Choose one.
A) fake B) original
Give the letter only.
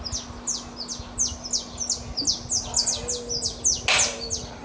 B